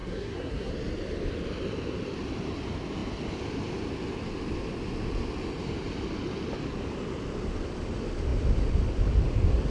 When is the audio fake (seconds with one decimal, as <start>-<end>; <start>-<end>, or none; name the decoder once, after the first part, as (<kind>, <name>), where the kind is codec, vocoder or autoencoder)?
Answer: 0.0-0.7 (codec, SNAC)